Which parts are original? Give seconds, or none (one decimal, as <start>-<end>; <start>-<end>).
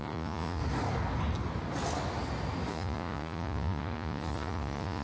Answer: 0.6-2.7